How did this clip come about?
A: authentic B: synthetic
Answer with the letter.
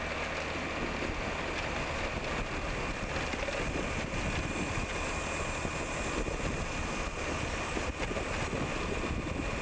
A